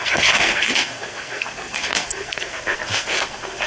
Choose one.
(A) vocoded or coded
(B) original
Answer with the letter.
A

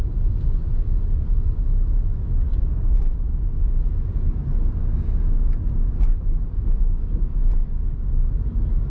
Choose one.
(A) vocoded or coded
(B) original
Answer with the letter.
B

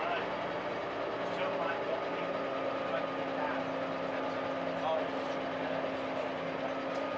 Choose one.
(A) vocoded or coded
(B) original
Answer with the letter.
B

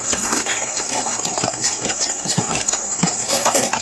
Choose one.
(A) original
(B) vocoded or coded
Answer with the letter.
B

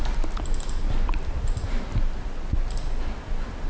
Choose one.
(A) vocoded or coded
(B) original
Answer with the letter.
B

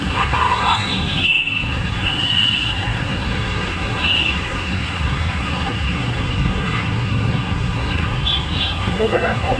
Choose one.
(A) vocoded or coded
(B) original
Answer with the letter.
A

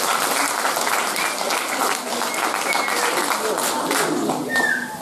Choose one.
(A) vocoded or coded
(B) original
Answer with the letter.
B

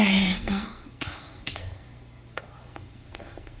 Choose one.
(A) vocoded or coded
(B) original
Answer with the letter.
A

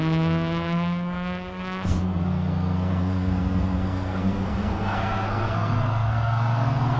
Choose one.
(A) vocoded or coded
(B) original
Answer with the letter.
A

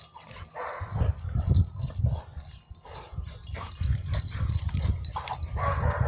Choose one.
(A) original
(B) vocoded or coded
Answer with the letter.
A